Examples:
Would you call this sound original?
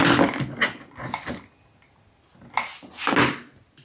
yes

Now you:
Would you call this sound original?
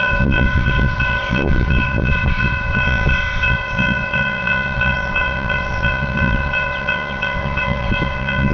no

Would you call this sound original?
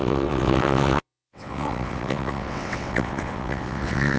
no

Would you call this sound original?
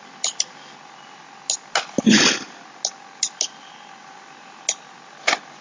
yes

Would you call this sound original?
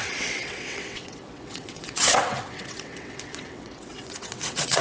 no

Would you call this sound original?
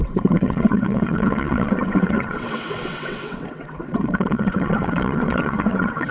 no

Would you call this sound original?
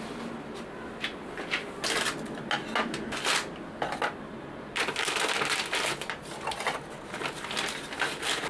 yes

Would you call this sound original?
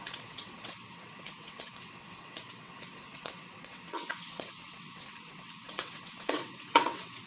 no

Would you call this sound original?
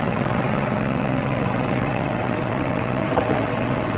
no